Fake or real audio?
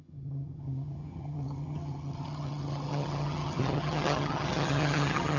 fake